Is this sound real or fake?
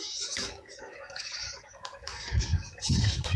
fake